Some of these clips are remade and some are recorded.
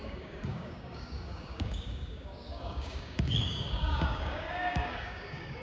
remade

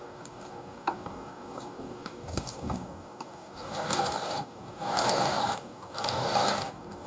remade